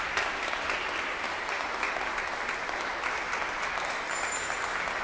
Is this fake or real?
real